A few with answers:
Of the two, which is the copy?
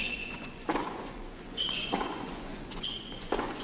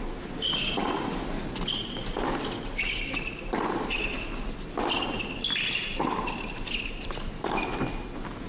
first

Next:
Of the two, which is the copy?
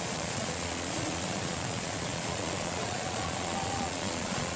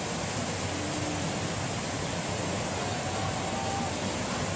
first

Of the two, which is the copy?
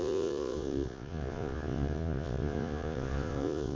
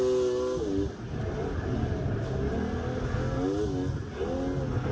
first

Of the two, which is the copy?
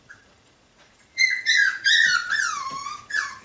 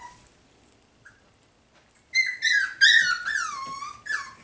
first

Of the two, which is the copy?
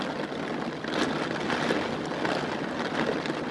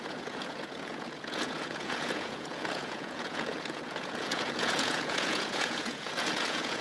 second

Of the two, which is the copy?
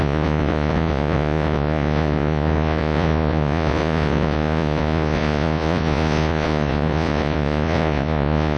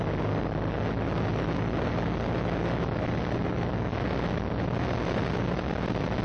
first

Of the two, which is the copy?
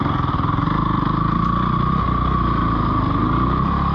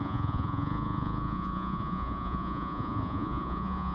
second